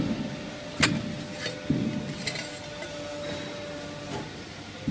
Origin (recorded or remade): recorded